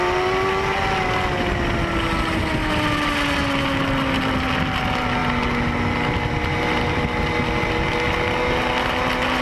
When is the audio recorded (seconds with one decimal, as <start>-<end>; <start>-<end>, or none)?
0.0-9.4